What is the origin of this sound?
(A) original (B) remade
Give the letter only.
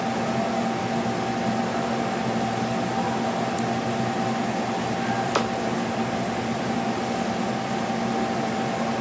A